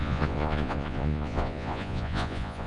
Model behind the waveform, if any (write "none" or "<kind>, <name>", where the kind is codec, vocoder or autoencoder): vocoder, Vocos